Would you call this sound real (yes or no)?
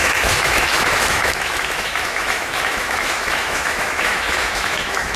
no